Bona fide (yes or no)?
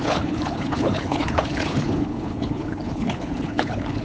no